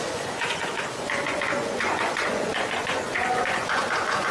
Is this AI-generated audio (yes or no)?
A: yes